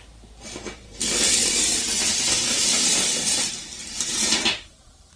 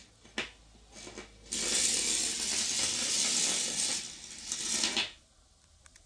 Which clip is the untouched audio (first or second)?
second